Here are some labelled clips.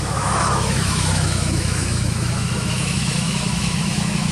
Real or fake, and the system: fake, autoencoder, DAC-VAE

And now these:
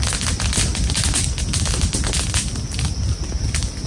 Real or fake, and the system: real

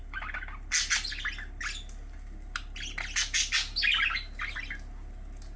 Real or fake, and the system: real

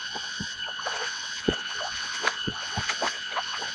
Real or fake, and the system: fake, vocoder, WaveNeXt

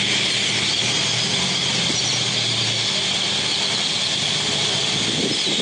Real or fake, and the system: real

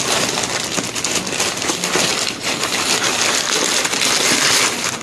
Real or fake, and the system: real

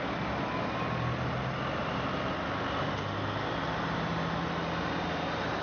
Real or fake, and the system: real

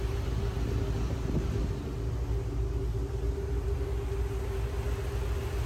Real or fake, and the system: real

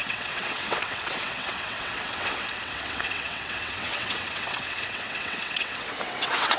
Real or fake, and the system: fake, vocoder, WaveNeXt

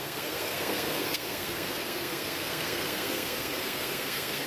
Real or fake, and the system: fake, codec, SNAC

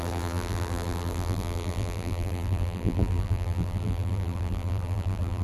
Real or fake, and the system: fake, vocoder, BigVGAN v2